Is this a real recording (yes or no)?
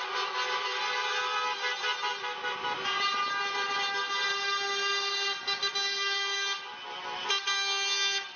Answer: yes